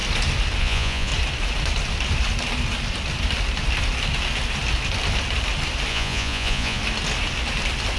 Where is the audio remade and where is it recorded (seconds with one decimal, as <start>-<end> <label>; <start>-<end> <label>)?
0.0-0.6 recorded; 0.6-1.1 remade; 1.1-5.9 recorded; 5.9-6.8 remade; 6.8-8.0 recorded